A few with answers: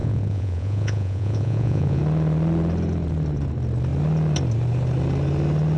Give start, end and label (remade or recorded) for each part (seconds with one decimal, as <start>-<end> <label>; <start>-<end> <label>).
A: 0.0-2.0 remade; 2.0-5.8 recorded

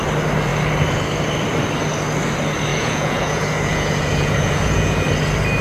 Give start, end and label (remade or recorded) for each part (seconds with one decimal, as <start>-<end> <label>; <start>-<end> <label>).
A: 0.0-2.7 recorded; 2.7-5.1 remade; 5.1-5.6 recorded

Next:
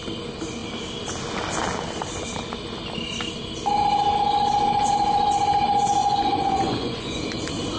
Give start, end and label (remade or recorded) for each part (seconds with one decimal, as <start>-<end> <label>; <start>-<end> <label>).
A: 0.0-6.0 recorded; 6.0-7.2 remade; 7.2-7.8 recorded

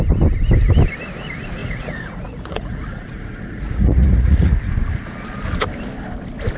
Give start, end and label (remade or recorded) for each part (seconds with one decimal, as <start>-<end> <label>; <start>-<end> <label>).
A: 0.0-1.6 recorded; 1.6-4.7 remade; 4.7-6.6 recorded